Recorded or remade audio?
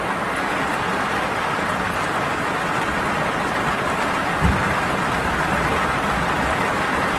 recorded